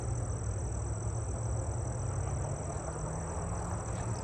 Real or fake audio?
real